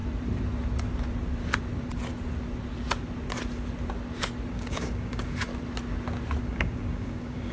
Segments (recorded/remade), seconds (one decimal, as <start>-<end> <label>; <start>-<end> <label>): 0.0-4.5 recorded; 4.5-5.5 remade; 5.5-6.4 recorded; 6.4-7.5 remade

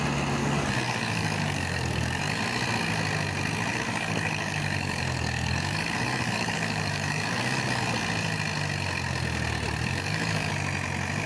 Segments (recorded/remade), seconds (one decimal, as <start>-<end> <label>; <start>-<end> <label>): 0.0-0.4 recorded; 0.4-2.4 remade; 2.4-3.7 recorded; 3.7-7.8 remade; 7.8-9.9 recorded; 9.9-10.5 remade; 10.5-11.3 recorded

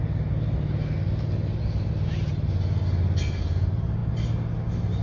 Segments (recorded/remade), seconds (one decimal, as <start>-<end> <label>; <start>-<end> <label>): 0.0-5.0 recorded

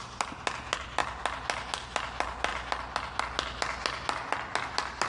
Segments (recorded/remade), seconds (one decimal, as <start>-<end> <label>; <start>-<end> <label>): 0.0-5.1 recorded